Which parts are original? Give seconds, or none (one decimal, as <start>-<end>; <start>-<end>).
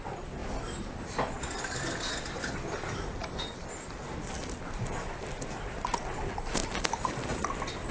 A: none